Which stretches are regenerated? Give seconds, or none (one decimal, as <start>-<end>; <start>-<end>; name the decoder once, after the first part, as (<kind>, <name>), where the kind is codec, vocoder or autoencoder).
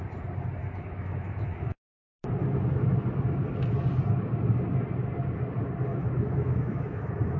0.6-2.2 (autoencoder, DAC-VAE); 5.9-7.4